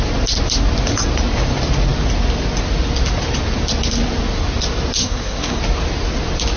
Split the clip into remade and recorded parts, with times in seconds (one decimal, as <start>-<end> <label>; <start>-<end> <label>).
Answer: 0.0-5.0 recorded; 5.0-5.6 remade; 5.6-6.6 recorded